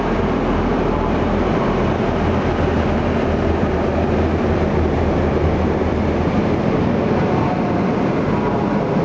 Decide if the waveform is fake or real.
real